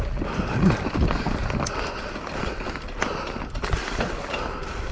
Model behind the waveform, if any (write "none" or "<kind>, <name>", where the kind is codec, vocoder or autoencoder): none